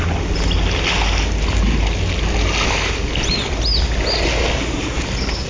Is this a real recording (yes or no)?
yes